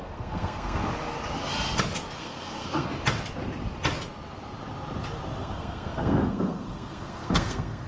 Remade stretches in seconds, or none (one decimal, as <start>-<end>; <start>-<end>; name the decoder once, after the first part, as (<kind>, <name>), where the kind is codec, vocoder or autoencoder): 0.0-0.8 (codec, SNAC); 2.2-2.9; 5.4-7.9